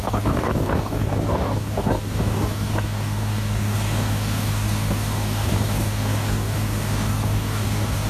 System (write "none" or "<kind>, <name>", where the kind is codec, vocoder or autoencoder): codec, DAC